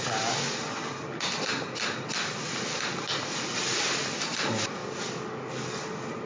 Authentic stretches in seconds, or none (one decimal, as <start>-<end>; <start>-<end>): 0.0-4.8; 5.5-6.3